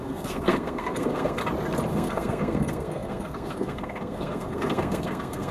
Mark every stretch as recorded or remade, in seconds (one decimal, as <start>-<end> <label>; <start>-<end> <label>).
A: 0.0-1.4 remade; 1.4-1.9 recorded; 1.9-5.5 remade